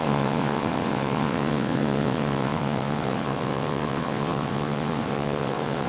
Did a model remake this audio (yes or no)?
yes